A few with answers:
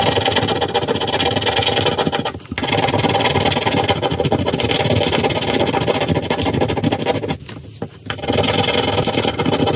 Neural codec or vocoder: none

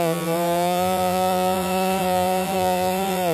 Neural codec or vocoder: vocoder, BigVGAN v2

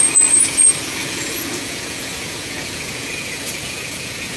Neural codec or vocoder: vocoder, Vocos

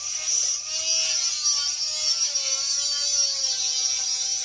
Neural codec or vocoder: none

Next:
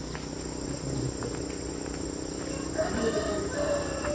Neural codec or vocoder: none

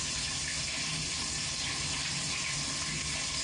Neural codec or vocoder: none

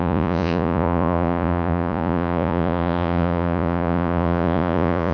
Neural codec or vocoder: vocoder, Vocos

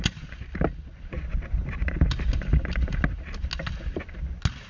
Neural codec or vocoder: none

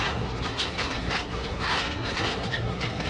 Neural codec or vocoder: codec, SNAC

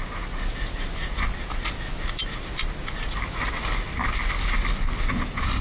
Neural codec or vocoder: none